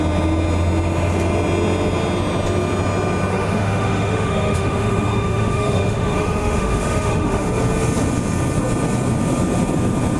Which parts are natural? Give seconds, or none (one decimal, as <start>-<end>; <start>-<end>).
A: 0.0-3.3; 7.5-10.2